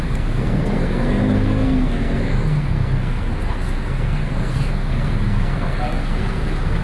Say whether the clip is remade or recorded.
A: remade